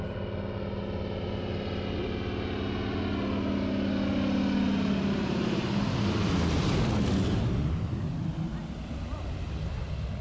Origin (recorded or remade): recorded